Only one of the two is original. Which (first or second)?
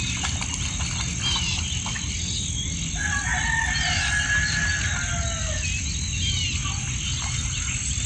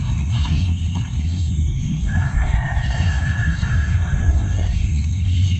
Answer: first